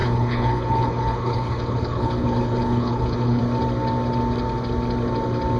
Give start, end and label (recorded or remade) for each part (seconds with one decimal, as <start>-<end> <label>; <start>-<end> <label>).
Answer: 0.0-3.4 remade; 3.4-5.6 recorded